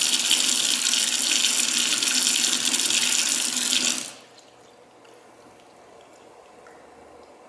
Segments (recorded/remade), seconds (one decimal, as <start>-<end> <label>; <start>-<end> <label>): 0.0-7.5 recorded